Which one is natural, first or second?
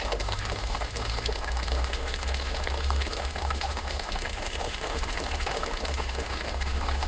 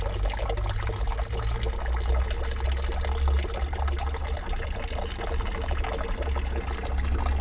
second